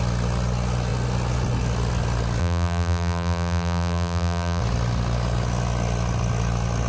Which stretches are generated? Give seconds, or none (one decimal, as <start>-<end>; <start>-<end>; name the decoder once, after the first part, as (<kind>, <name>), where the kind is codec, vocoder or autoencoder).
2.4-4.6 (vocoder, BigVGAN v2)